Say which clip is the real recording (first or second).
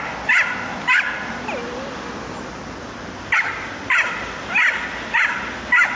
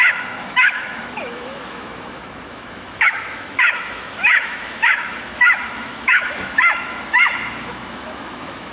first